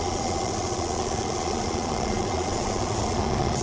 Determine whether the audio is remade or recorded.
remade